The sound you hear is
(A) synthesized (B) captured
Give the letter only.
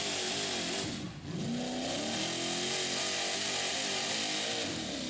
B